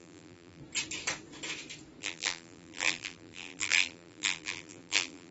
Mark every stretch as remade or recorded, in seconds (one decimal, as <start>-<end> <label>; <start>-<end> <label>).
0.0-0.6 remade; 0.6-2.0 recorded; 2.0-5.3 remade